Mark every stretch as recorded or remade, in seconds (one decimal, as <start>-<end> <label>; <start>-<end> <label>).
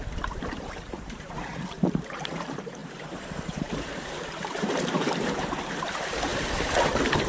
0.0-6.3 remade; 6.3-7.3 recorded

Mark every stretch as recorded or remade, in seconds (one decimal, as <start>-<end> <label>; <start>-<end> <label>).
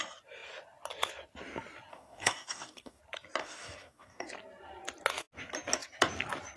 0.0-1.9 recorded; 1.9-3.0 remade; 3.0-3.4 recorded; 3.4-4.3 remade; 4.3-6.6 recorded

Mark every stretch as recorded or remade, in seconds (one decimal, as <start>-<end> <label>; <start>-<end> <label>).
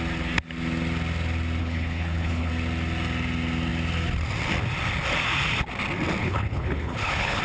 0.0-1.6 recorded; 1.6-2.5 remade; 2.5-6.2 recorded; 6.2-7.4 remade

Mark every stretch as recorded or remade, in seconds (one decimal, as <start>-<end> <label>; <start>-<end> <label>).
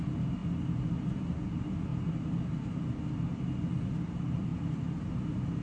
0.0-0.4 recorded; 0.4-0.9 remade; 0.9-4.5 recorded; 4.5-5.1 remade; 5.1-5.6 recorded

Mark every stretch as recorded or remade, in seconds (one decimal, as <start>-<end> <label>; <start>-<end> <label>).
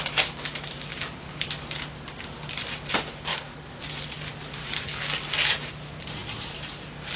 0.0-3.3 recorded; 3.3-3.8 remade; 3.8-4.6 recorded; 4.6-5.2 remade; 5.2-7.2 recorded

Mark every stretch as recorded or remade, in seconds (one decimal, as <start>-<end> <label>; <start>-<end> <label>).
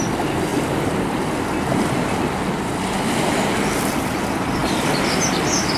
0.0-5.8 recorded